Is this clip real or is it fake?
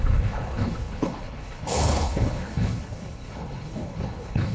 fake